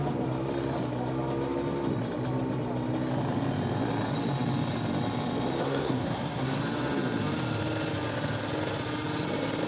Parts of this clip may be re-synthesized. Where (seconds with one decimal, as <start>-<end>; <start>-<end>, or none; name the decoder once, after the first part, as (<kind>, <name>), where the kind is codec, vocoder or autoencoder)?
5.6-6.6 (codec, SNAC)